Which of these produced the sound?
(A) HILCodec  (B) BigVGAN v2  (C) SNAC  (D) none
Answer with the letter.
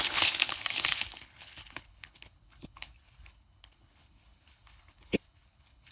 A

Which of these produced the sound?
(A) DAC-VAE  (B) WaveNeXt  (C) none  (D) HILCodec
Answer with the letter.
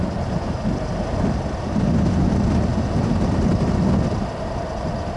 C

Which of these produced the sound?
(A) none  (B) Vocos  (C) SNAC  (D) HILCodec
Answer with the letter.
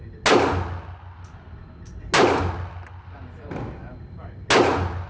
A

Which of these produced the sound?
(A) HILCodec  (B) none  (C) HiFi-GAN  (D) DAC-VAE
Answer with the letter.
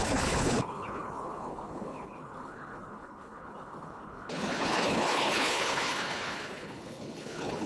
A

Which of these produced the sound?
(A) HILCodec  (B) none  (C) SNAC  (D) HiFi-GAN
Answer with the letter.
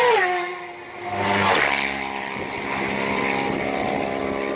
B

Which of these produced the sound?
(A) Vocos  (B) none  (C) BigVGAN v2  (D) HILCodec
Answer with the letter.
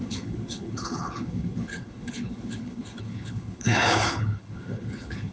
D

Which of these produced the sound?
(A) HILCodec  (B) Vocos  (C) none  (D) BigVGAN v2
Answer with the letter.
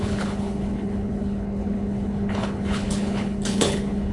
A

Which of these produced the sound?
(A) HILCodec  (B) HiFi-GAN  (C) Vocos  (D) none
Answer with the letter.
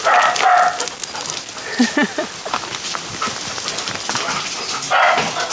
D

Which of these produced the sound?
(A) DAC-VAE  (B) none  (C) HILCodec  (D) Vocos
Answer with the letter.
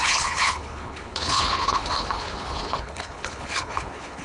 C